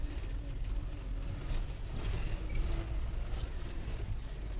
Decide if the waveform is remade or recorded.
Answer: recorded